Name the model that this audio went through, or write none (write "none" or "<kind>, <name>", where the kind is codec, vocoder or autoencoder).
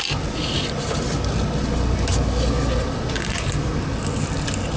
none